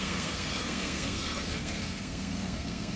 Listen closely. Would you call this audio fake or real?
fake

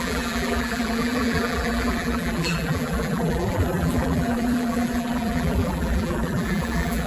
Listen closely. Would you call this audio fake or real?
fake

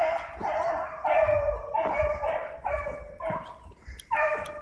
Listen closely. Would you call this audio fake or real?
real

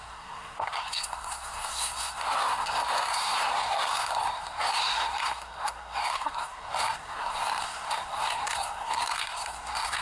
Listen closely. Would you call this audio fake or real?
fake